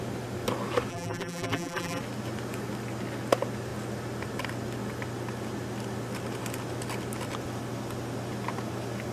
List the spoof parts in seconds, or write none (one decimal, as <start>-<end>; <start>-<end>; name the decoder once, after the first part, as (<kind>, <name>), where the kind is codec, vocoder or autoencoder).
0.9-2.0 (vocoder, BigVGAN v2)